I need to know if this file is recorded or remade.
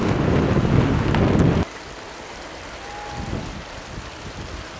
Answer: recorded